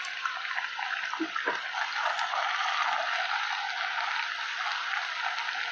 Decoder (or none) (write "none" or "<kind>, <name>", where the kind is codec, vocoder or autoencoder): none